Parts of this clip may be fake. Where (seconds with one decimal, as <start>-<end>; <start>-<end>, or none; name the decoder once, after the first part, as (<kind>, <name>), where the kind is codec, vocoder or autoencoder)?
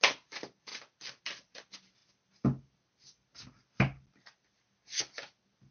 none